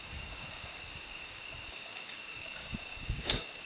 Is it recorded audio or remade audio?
remade